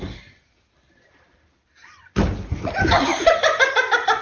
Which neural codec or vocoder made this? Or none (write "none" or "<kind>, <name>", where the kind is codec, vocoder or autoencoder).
none